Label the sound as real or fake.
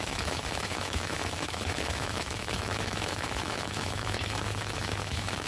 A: fake